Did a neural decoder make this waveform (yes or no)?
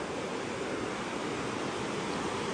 no